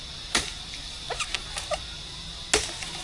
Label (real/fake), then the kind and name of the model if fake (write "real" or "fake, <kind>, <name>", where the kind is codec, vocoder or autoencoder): real